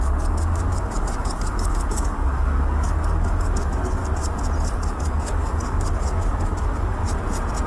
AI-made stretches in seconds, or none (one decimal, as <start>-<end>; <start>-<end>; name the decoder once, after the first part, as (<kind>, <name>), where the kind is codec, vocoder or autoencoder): 0.0-4.0 (codec, DAC); 5.0-7.0